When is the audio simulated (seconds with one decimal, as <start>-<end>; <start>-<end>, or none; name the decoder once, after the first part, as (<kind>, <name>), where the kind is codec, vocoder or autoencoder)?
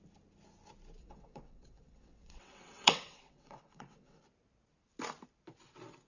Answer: 1.0-4.2 (vocoder, WaveNeXt)